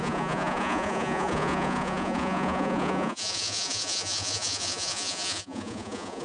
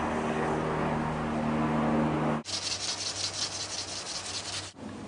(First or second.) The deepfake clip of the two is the first